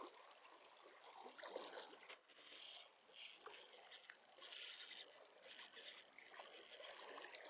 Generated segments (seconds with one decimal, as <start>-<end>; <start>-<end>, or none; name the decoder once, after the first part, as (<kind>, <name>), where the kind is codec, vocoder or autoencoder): 2.1-2.6 (codec, HILCodec)